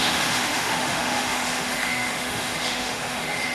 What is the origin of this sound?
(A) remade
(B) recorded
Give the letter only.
A